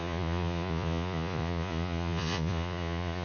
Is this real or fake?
fake